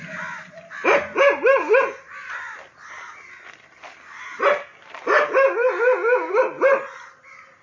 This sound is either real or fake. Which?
real